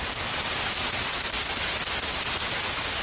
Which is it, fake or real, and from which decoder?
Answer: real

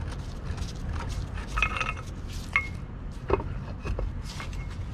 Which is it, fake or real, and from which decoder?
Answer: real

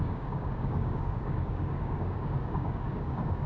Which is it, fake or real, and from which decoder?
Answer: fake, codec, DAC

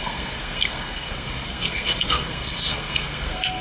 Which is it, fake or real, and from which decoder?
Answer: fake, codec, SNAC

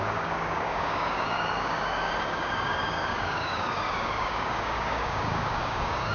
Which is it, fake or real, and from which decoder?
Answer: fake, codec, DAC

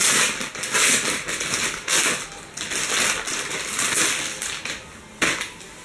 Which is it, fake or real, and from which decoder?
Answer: real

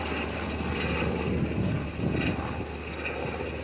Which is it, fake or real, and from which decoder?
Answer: real